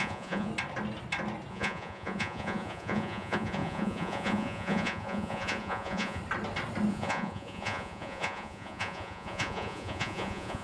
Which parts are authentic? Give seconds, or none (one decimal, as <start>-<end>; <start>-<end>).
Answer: 0.5-1.5; 6.2-6.9